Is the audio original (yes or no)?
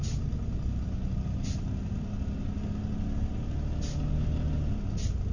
yes